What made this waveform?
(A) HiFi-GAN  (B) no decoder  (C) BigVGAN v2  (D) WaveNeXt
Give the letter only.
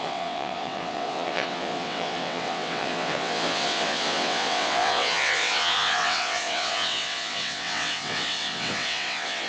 D